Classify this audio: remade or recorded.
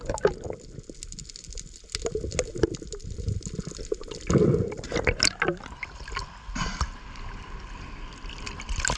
recorded